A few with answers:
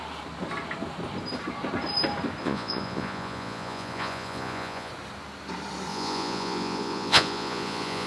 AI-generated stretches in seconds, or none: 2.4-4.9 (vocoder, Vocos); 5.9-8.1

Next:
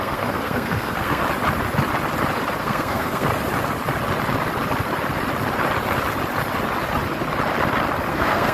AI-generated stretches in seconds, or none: 0.0-1.2 (codec, SNAC); 2.6-3.3; 8.1-8.5

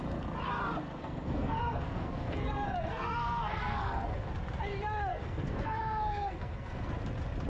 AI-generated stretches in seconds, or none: 1.0-4.3 (codec, SNAC); 5.1-6.9

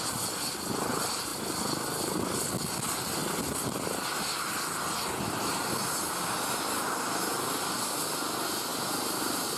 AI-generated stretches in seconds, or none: 8.7-9.6 (vocoder, BigVGAN v2)

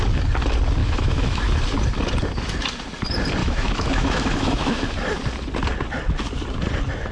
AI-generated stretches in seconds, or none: 0.8-1.4 (autoencoder, DAC-VAE); 3.4-4.8

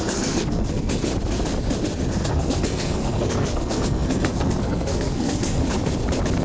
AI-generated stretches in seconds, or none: 0.0-1.0 (codec, SNAC); 2.1-5.6

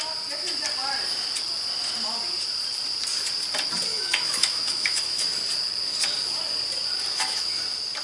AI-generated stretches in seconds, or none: 3.9-5.2 (autoencoder, DAC-VAE); 7.1-7.6

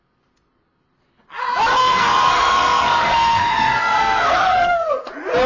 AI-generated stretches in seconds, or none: 1.8-5.1 (codec, SNAC)